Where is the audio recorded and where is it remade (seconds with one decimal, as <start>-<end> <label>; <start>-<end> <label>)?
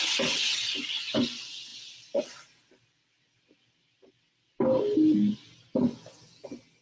0.0-6.8 recorded